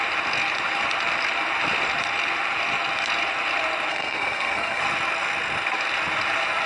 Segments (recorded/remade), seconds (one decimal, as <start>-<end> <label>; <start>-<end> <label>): 0.0-3.9 recorded; 3.9-4.8 remade; 4.8-6.7 recorded

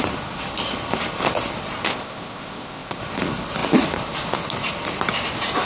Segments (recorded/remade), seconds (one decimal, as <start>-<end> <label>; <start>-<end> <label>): 0.0-1.9 recorded; 1.9-3.0 remade; 3.0-5.7 recorded